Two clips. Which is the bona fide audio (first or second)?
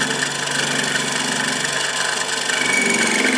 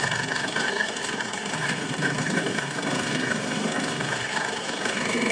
first